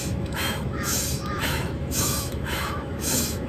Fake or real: fake